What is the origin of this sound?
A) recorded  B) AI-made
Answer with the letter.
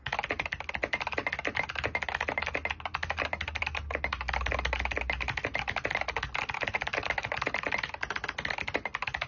A